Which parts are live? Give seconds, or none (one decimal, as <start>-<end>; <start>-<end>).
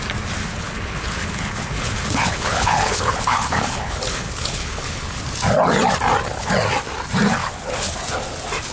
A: 0.0-0.4; 5.2-7.4; 7.9-8.7